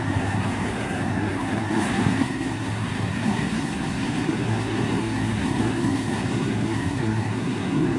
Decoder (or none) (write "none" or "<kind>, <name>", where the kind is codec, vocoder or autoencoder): codec, SNAC